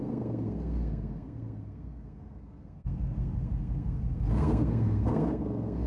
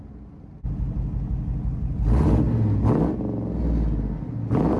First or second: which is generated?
first